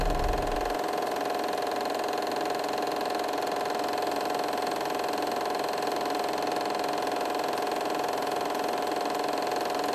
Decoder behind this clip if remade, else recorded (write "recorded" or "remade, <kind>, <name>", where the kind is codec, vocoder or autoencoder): recorded